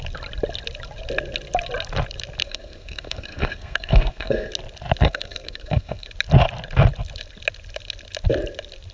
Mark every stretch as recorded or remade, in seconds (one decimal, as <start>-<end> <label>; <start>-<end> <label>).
0.0-2.4 recorded; 2.4-4.5 remade; 4.5-5.0 recorded; 5.0-6.1 remade; 6.1-8.9 recorded